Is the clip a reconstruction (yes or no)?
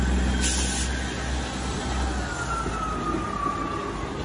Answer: no